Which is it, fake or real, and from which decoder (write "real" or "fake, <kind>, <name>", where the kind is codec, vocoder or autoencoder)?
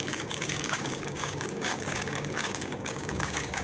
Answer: fake, codec, DAC